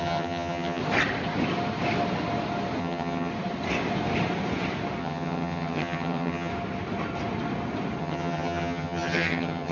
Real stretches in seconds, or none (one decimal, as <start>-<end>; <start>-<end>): 0.8-2.8; 3.3-5.0; 6.5-8.0